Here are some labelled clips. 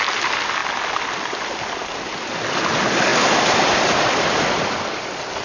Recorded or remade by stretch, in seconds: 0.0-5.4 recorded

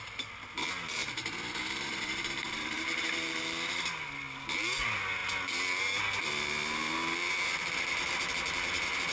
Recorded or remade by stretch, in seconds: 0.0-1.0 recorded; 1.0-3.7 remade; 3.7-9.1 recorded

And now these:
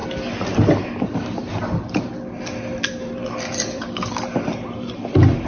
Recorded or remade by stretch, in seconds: 0.0-0.8 recorded; 0.8-5.5 remade